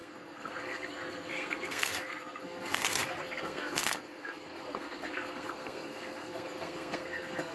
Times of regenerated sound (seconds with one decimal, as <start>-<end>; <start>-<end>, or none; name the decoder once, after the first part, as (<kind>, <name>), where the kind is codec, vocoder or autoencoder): 0.0-7.5 (codec, SNAC)